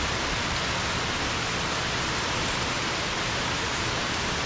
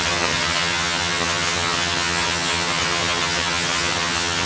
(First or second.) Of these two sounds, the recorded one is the first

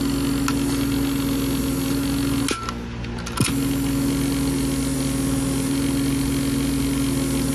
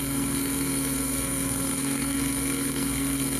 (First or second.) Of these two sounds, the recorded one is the first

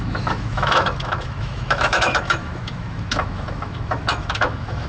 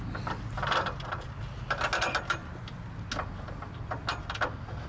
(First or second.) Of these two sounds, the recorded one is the second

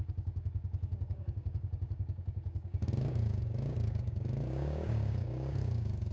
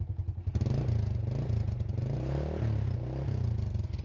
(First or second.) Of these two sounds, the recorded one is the second